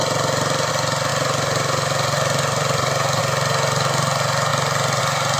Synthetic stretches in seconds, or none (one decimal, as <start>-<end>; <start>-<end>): 1.1-3.2